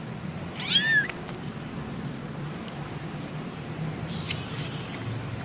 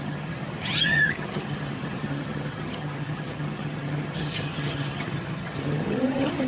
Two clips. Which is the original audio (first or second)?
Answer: first